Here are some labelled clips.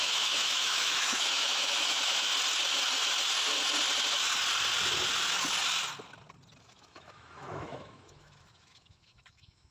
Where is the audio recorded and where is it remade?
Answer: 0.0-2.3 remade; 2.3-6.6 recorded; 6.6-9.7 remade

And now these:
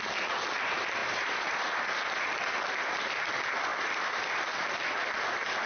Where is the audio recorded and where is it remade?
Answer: 0.0-1.0 recorded; 1.0-1.9 remade; 1.9-3.7 recorded; 3.7-4.7 remade; 4.7-5.7 recorded

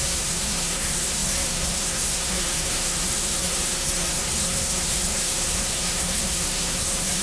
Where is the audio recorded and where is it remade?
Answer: 0.0-7.2 remade

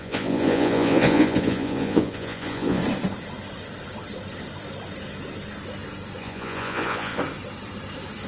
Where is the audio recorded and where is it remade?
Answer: 0.0-2.8 remade; 2.8-6.2 recorded; 6.2-7.2 remade; 7.2-8.3 recorded

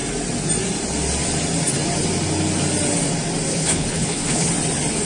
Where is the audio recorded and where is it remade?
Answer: 0.0-3.5 recorded; 3.5-4.5 remade; 4.5-5.0 recorded

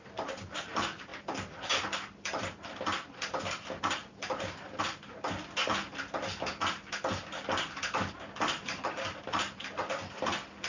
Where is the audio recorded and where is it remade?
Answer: 0.0-10.7 recorded

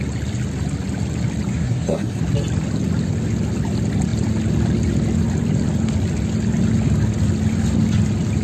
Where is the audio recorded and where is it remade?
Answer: 0.0-1.5 recorded; 1.5-2.2 remade; 2.2-8.4 recorded